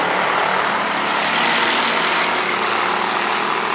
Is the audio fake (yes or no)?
no